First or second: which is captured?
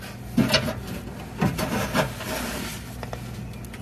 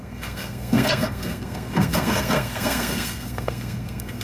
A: first